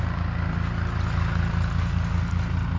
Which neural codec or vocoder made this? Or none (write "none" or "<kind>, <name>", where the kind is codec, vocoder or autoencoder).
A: none